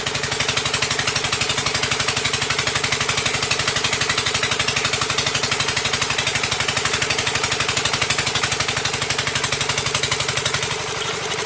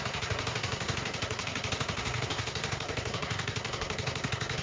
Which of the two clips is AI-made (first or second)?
second